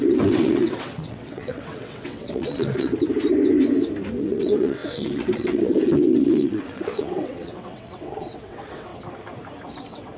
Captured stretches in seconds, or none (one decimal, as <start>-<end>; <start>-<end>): 2.9-4.2; 8.9-9.7